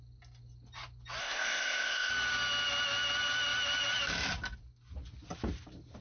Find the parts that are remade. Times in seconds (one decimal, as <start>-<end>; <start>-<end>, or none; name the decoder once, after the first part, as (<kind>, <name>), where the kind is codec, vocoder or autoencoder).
1.2-2.1 (codec, ZipCodec)